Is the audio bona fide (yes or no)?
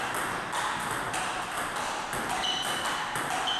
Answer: yes